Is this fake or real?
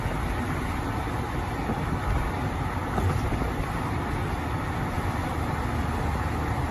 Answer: real